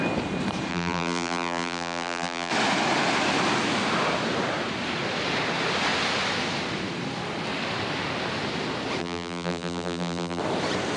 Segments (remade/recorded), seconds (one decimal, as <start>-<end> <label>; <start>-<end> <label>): 0.0-0.7 recorded; 0.7-2.5 remade; 2.5-9.0 recorded; 9.0-10.4 remade; 10.4-11.0 recorded